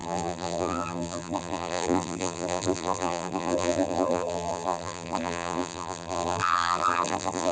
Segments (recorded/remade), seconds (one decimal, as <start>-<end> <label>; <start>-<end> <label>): 0.0-7.5 remade